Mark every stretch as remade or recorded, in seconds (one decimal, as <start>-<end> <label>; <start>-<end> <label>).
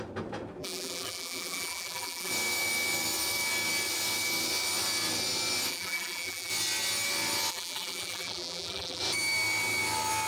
0.0-0.6 recorded; 0.6-2.3 remade; 2.3-5.7 recorded; 5.7-6.5 remade; 6.5-7.5 recorded; 7.5-9.0 remade; 9.0-10.3 recorded